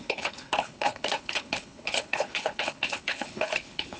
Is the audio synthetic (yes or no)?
yes